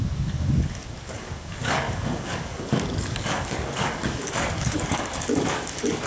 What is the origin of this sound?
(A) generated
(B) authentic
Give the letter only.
A